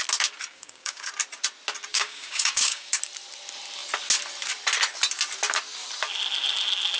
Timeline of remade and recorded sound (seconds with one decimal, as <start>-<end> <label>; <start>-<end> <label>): 0.0-0.5 recorded; 0.5-1.1 remade; 1.1-1.9 recorded; 1.9-2.9 remade; 2.9-7.0 recorded